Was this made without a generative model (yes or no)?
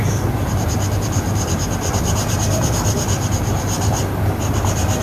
no